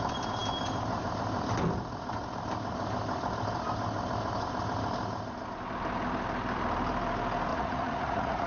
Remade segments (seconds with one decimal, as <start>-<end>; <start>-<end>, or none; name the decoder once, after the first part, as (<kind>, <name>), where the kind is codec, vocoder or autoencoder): 7.5-8.5 (vocoder, Vocos)